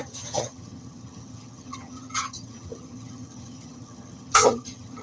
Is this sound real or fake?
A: fake